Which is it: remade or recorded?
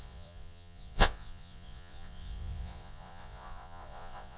remade